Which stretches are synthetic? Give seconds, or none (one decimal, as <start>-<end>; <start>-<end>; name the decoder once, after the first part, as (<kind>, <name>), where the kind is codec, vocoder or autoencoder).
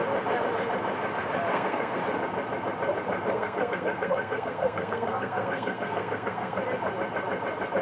1.5-2.0 (codec, SNAC); 3.3-6.6